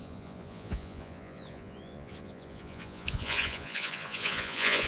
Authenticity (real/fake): fake